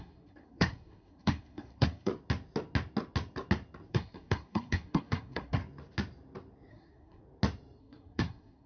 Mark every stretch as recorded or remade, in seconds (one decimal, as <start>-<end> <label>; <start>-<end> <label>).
0.0-2.1 remade; 2.1-3.9 recorded; 3.9-5.6 remade; 5.6-6.7 recorded; 6.7-7.2 remade; 7.2-7.8 recorded; 7.8-8.7 remade